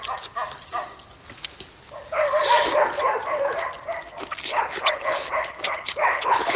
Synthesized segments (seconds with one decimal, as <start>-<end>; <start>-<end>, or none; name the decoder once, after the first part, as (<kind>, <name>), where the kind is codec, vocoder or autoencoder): 4.5-6.6 (codec, HILCodec)